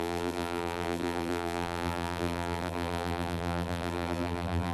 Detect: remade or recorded remade